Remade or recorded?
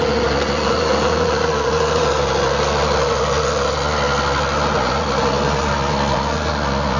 remade